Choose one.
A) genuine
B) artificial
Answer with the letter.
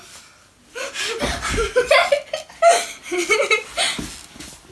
A